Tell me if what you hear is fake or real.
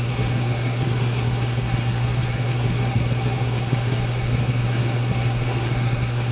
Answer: fake